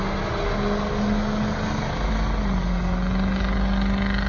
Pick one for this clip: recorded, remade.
recorded